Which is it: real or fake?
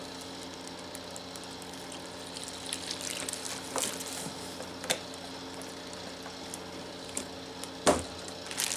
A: real